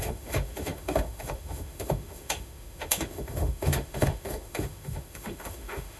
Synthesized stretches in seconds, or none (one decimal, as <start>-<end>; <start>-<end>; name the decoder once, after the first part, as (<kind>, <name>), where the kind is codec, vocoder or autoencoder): 0.0-6.0 (autoencoder, DAC-VAE)